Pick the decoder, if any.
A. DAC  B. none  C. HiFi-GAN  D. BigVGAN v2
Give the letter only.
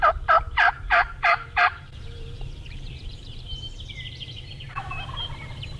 D